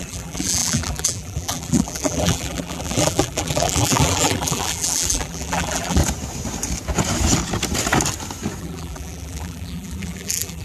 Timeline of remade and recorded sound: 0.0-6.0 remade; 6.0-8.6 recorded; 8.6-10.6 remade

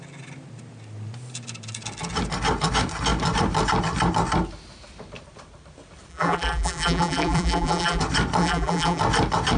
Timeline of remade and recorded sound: 0.0-6.1 recorded; 6.1-8.0 remade; 8.0-8.4 recorded; 8.4-9.0 remade; 9.0-9.6 recorded